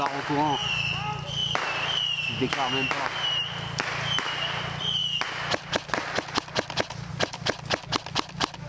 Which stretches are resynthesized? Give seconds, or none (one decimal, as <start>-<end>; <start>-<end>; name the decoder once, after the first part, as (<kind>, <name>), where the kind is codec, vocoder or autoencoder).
none